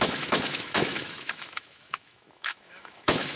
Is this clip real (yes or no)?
no